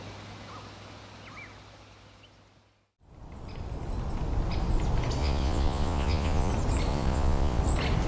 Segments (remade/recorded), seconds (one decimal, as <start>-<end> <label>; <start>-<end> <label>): 0.0-5.2 recorded; 5.2-6.5 remade; 6.5-6.9 recorded; 6.9-7.6 remade; 7.6-8.1 recorded